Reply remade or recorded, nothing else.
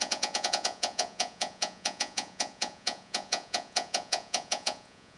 remade